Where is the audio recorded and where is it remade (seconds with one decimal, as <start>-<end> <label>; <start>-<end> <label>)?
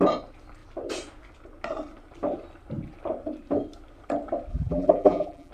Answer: 0.0-4.5 recorded; 4.5-5.5 remade